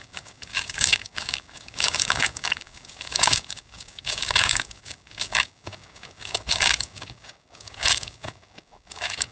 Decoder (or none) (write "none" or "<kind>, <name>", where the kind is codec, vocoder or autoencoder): codec, DAC